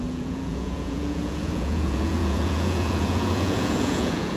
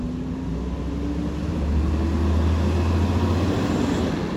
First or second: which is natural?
second